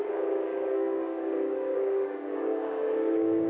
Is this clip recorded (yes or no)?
no